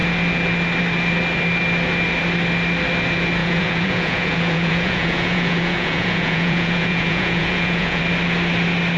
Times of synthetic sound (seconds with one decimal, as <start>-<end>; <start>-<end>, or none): 3.4-8.0